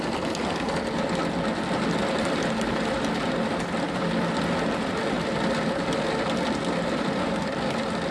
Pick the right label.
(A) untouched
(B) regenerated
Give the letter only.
A